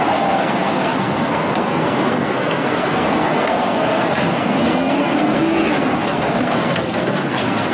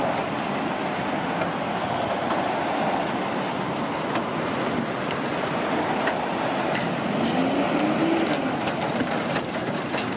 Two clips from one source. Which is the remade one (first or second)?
first